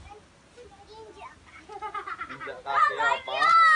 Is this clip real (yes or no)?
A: yes